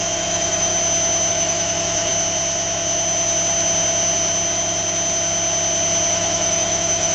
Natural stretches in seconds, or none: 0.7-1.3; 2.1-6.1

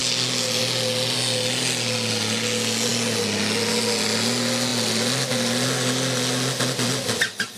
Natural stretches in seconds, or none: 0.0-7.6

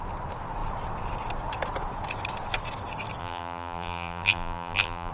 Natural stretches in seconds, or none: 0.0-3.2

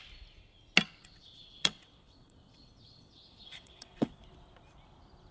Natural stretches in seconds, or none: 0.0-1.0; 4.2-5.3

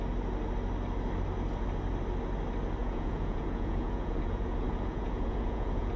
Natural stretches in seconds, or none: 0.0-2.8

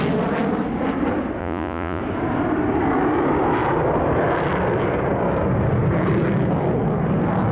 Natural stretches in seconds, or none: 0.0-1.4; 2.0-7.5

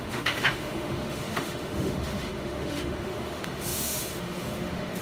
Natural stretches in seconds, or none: none